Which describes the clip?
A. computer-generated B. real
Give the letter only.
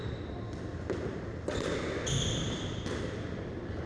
B